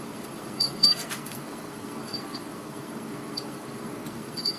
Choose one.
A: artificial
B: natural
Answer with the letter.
A